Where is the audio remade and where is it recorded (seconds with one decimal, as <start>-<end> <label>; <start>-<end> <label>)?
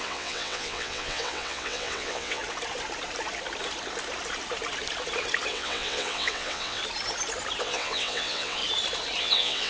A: 0.0-2.4 remade; 2.4-5.5 recorded; 5.5-6.8 remade; 6.8-7.6 recorded; 7.6-8.6 remade; 8.6-9.2 recorded; 9.2-9.7 remade